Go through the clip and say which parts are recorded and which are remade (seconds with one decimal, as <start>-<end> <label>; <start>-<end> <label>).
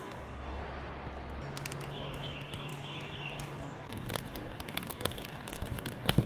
0.0-0.6 remade; 0.6-1.9 recorded; 1.9-6.3 remade